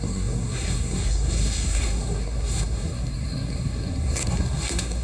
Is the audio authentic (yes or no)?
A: no